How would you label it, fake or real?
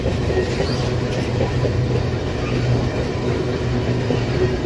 real